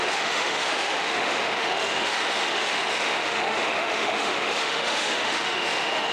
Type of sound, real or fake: fake